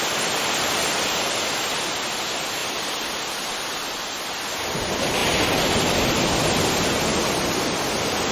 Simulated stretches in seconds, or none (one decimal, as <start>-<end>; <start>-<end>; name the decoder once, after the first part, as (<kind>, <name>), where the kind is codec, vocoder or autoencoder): none